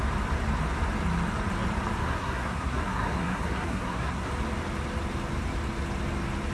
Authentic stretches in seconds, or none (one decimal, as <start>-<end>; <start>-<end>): 0.0-2.0; 4.3-6.5